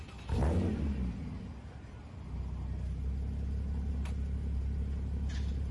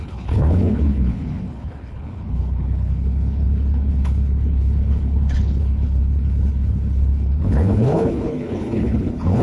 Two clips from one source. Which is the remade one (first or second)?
second